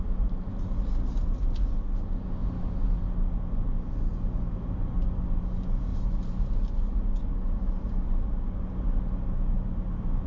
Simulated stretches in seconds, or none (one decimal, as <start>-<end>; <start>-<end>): 2.4-3.0; 5.9-7.2

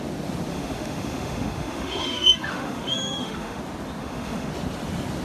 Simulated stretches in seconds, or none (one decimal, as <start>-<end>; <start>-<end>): 0.5-3.6; 4.0-4.5